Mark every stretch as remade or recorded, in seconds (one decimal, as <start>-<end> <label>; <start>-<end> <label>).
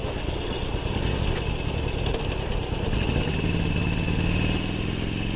0.0-5.4 recorded